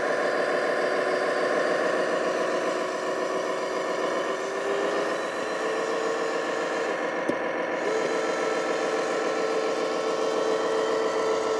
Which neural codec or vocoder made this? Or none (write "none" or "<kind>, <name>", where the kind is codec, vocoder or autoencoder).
none